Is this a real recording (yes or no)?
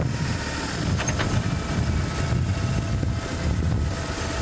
yes